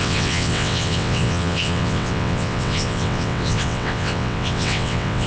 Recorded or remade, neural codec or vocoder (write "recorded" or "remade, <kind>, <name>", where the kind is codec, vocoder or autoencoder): remade, vocoder, WaveNeXt